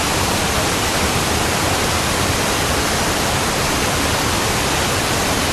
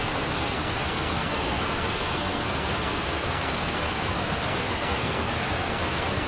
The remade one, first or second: second